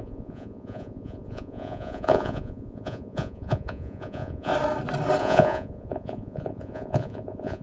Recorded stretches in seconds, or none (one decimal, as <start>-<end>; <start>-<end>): 4.5-5.2